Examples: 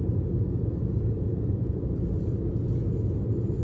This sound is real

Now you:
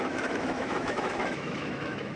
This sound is fake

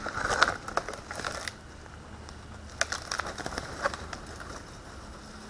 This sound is real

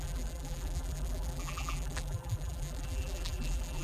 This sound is fake